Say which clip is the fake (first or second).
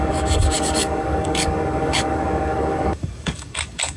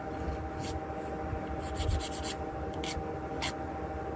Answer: first